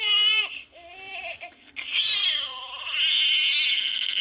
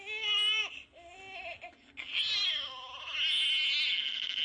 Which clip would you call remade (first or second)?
first